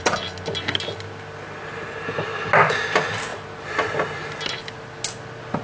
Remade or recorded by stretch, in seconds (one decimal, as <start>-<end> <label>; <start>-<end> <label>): 0.0-5.6 recorded